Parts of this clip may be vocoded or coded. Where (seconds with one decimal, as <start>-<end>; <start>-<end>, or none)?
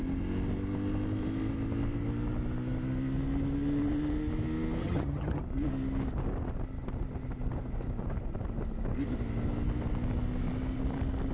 4.8-5.4